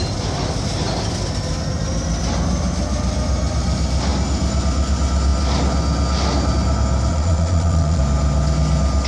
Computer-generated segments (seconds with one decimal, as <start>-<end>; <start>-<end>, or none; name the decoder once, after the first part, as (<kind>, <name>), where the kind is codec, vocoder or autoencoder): 7.1-8.0 (vocoder, Vocos)